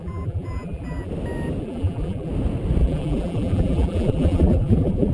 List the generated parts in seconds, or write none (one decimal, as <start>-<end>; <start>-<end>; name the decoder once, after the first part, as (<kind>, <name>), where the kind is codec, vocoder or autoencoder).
0.0-1.1 (vocoder, BigVGAN v2); 1.6-2.3; 2.8-5.1